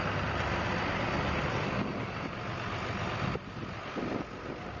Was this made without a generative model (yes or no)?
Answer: yes